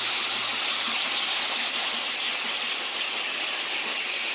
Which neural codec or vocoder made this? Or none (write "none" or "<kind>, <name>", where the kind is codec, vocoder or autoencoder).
none